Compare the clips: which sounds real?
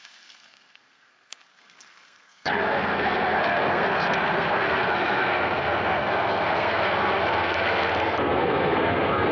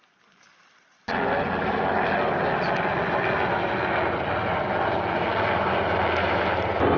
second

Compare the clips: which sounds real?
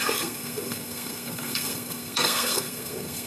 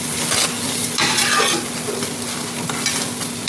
second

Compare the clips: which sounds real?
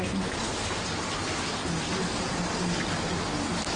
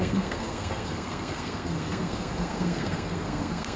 first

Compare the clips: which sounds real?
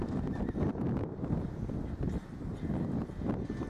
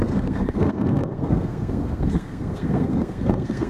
first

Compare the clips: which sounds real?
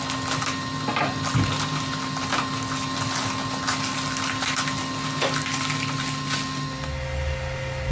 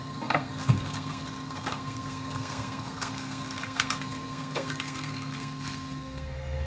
first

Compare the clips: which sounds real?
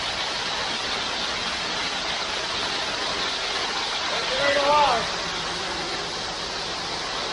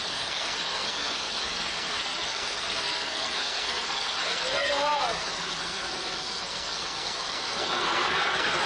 first